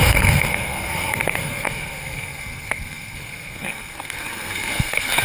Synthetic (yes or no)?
yes